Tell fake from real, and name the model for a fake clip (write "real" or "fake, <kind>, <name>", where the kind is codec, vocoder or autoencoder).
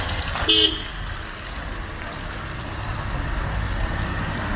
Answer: real